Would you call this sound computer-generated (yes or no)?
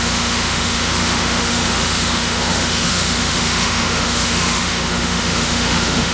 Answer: yes